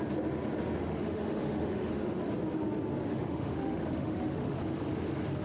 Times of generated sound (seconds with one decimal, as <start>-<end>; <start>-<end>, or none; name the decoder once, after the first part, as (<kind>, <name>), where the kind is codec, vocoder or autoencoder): 0.8-2.2 (autoencoder, DAC-VAE); 3.1-4.6